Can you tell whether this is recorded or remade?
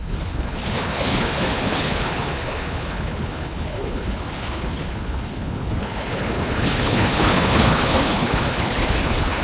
remade